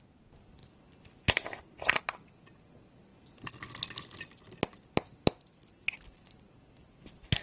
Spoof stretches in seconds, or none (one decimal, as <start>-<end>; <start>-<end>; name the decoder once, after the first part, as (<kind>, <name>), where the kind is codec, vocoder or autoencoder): none